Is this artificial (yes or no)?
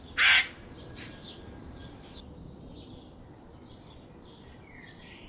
no